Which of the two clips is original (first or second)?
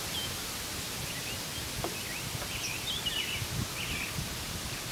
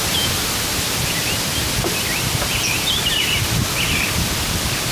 first